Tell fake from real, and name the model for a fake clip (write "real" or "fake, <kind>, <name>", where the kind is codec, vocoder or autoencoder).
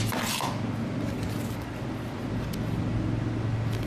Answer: real